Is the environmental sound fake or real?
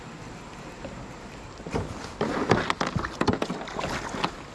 real